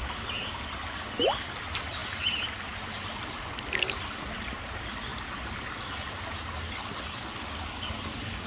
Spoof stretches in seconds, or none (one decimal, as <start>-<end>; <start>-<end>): none